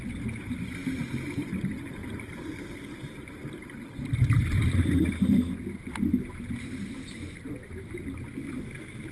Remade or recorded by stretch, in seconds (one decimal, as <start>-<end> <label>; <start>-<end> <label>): 0.0-9.1 recorded